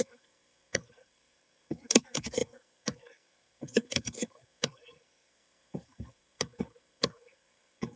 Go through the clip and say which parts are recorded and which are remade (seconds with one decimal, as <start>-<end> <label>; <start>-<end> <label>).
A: 0.0-8.0 remade